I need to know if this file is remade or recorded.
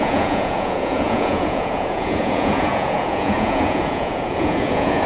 remade